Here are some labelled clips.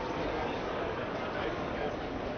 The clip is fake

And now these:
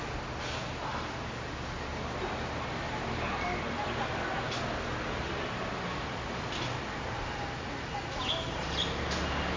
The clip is real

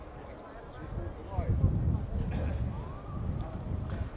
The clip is real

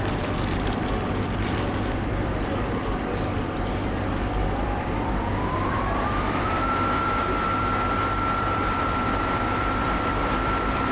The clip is fake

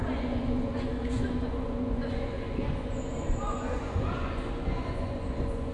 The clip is fake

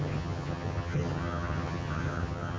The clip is fake